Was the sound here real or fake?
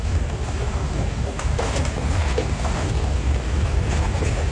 fake